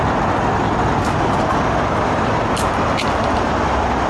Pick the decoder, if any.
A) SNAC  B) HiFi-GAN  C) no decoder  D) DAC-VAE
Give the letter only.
C